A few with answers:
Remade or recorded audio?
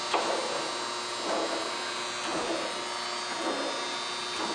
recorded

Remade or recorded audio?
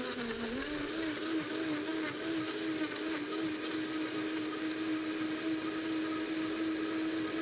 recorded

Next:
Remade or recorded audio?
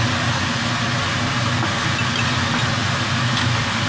recorded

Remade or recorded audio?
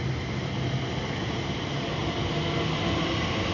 recorded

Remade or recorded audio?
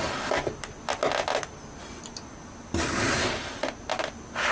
recorded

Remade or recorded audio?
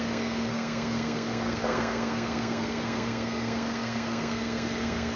remade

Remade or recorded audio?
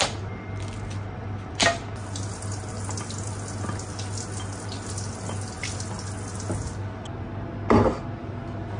recorded